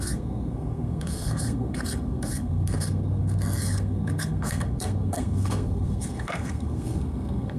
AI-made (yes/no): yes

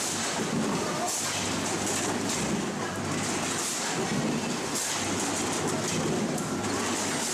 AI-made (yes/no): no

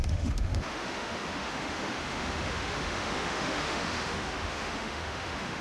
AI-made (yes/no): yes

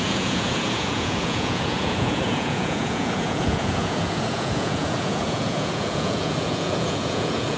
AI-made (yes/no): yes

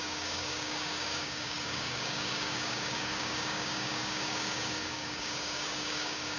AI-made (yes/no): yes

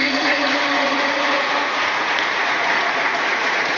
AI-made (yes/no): yes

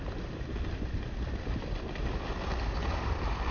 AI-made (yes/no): no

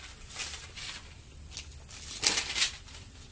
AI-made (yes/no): no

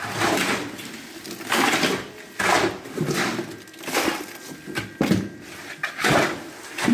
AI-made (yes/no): no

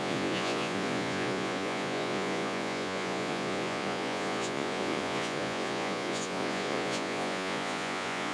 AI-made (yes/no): yes